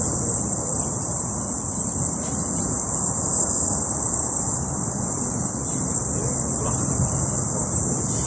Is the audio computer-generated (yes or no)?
no